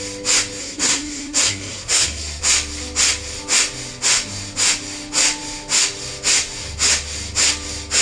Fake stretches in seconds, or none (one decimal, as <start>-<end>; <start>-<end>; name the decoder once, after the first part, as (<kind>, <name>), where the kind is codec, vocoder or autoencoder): 0.6-2.4 (codec, SNAC)